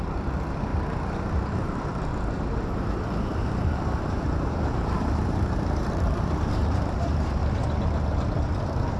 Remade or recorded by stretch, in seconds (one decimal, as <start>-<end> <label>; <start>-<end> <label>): 0.0-0.7 remade; 0.7-1.5 recorded; 1.5-2.1 remade; 2.1-3.3 recorded; 3.3-7.4 remade; 7.4-9.0 recorded